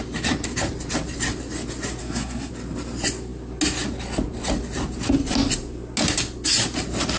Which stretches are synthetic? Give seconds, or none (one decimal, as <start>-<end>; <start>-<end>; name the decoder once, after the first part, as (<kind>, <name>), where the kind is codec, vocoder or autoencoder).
2.0-2.5 (codec, SNAC)